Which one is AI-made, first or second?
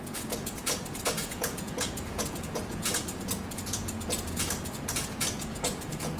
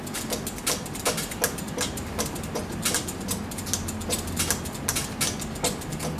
first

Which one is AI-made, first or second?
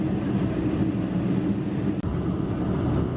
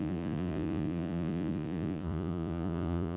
second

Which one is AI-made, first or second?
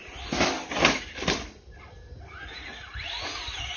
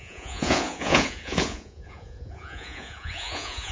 second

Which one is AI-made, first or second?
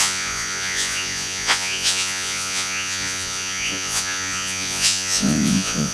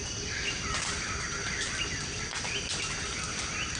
first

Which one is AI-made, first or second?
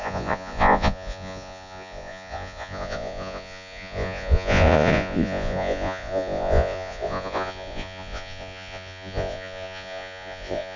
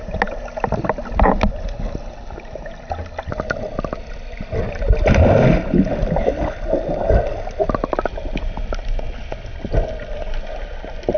first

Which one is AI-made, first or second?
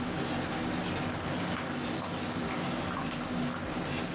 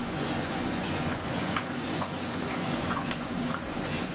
second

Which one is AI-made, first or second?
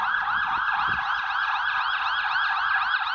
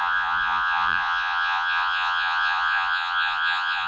second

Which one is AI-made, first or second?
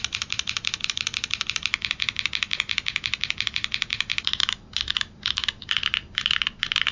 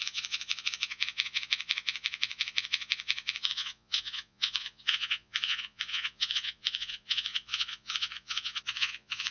second